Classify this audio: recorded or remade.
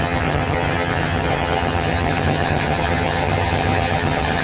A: remade